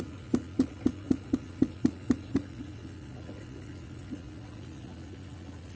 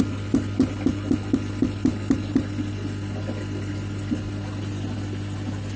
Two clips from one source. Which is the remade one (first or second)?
first